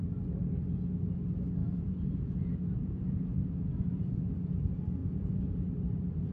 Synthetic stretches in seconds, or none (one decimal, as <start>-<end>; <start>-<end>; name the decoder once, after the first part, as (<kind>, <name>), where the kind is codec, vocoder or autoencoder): 1.6-4.2 (vocoder, Vocos); 5.0-5.5